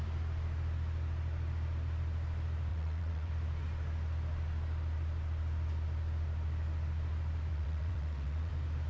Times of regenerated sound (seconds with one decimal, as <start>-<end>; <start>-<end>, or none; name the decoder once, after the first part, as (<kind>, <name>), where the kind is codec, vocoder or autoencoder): 2.7-3.3 (vocoder, WaveNeXt); 7.5-8.5